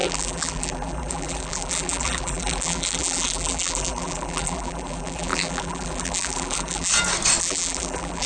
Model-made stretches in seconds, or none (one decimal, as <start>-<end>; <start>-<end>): 0.0-6.9; 7.4-8.3